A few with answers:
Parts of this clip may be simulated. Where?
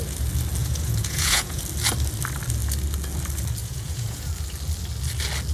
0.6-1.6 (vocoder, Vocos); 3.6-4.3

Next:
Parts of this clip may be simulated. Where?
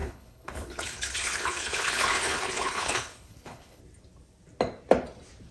0.0-3.8 (codec, HILCodec)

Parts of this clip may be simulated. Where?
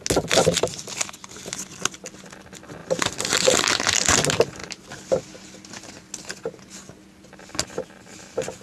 none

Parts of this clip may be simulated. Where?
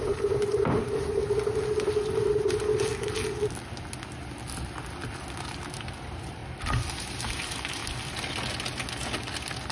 0.0-1.2 (vocoder, BigVGAN v2); 5.4-6.4; 6.9-7.8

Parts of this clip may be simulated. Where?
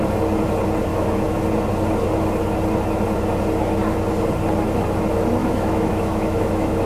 0.9-1.4 (autoencoder, DAC-VAE); 5.4-6.9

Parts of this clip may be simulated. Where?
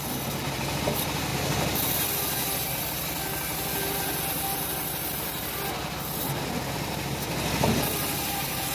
none